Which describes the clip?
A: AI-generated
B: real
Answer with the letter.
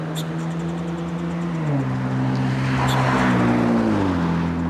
B